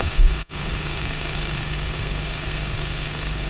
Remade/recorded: remade